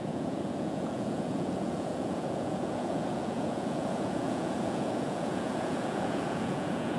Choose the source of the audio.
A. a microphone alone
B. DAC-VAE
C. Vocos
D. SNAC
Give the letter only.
C